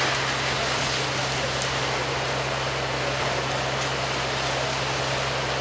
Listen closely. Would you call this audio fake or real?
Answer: real